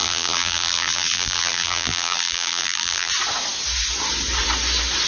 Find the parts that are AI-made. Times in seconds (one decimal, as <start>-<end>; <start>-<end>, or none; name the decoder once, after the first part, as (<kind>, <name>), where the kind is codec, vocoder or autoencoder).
0.0-3.1 (vocoder, BigVGAN v2)